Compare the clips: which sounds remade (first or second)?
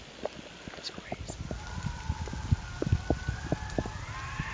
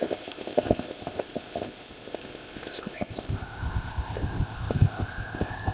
second